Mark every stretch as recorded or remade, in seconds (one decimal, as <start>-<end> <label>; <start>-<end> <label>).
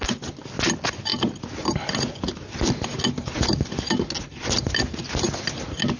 0.0-6.0 recorded